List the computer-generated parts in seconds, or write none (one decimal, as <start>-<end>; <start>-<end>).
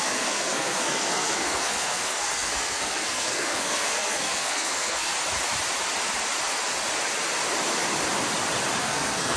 0.0-5.1; 8.8-9.4